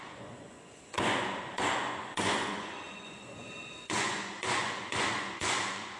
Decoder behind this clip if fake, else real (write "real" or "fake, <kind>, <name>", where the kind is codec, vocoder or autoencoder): fake, vocoder, Vocos